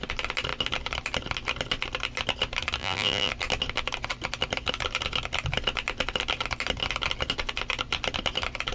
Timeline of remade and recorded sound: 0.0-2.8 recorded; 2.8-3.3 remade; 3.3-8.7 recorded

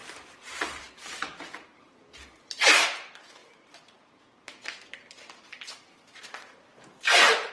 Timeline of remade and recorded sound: 0.0-7.5 remade

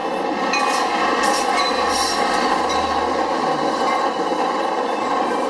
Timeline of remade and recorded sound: 0.0-1.2 recorded; 1.2-5.5 remade

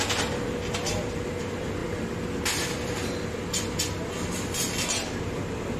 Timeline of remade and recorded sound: 0.0-5.8 recorded